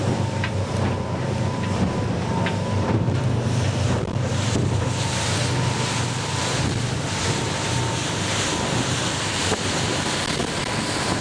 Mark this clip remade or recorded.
remade